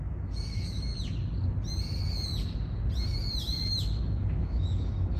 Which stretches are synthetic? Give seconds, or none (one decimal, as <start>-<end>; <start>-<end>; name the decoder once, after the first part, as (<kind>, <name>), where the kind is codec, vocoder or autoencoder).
0.0-0.9 (autoencoder, DAC-VAE); 4.0-5.2